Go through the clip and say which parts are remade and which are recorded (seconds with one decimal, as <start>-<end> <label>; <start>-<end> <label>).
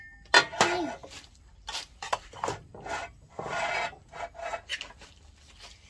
0.0-1.0 recorded; 1.0-3.7 remade; 3.7-5.9 recorded